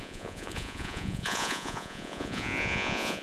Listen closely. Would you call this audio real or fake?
fake